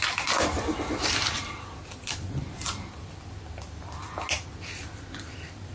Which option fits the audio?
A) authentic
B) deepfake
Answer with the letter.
A